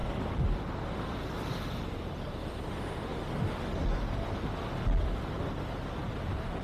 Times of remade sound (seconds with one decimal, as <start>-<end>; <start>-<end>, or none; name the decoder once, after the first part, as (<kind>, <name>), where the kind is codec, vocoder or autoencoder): none